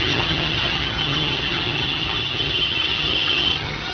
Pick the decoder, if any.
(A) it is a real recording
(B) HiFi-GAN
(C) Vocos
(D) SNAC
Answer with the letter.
B